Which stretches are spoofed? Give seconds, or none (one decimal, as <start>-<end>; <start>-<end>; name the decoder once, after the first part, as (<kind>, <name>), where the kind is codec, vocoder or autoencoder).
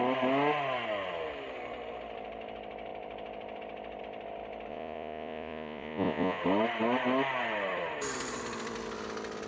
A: 4.7-6.4 (vocoder, Vocos)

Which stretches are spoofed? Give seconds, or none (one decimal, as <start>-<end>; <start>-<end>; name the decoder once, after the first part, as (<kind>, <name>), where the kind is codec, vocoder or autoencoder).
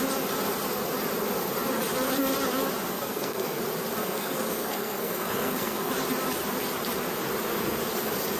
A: 2.9-3.6 (codec, SNAC); 4.0-5.9